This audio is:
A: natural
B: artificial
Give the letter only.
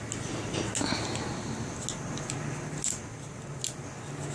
A